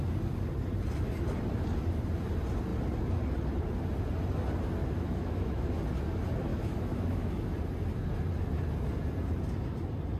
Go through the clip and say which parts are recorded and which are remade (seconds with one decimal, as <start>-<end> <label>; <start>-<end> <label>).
0.0-4.8 recorded; 4.8-5.8 remade; 5.8-6.5 recorded; 6.5-7.3 remade; 7.3-10.2 recorded